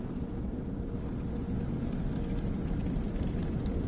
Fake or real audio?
real